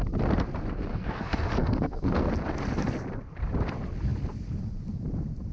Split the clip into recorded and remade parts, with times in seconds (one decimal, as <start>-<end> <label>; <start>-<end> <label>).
0.0-0.9 recorded; 0.9-2.3 remade; 2.3-5.5 recorded